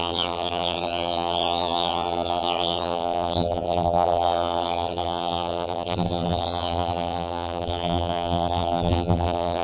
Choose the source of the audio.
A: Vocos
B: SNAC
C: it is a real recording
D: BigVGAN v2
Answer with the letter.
D